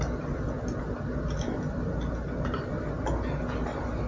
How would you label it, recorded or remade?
recorded